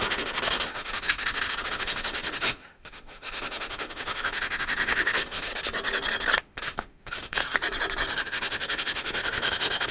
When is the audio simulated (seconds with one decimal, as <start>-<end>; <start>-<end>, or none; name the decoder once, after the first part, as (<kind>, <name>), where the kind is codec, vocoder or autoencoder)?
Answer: 0.0-5.5 (autoencoder, DAC-VAE); 6.4-7.4; 8.2-9.9